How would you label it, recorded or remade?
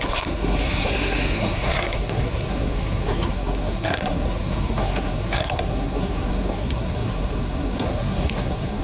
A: remade